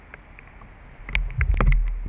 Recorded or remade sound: recorded